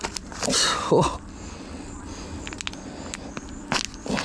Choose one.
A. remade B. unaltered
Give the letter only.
B